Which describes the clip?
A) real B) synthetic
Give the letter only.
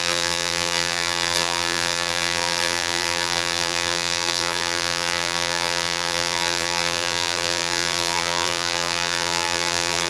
B